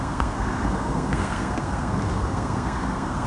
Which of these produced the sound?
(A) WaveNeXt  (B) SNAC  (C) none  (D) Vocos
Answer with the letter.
B